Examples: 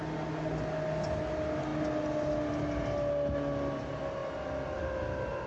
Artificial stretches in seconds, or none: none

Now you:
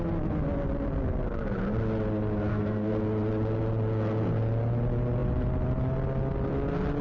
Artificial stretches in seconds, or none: 2.5-3.0 (codec, SNAC)

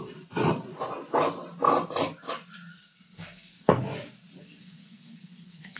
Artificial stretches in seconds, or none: 2.7-3.8 (codec, SNAC); 4.4-5.8

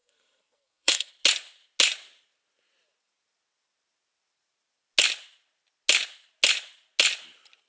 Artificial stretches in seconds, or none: 0.0-1.1 (codec, SNAC)

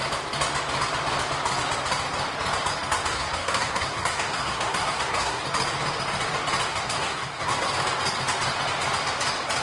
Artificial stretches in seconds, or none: 3.1-5.4 (codec, SNAC); 6.7-7.7

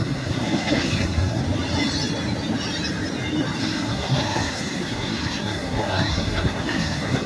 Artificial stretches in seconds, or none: 0.0-1.4 (codec, SNAC); 3.6-7.3

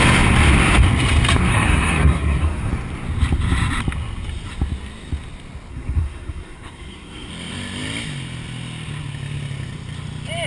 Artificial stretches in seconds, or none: 1.5-2.7 (codec, SNAC); 5.7-7.3